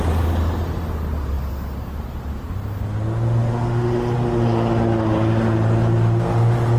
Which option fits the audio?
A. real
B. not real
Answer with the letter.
A